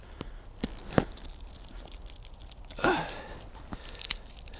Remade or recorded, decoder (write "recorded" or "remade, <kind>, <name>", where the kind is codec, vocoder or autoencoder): recorded